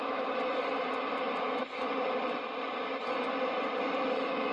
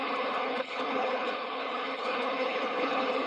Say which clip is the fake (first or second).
second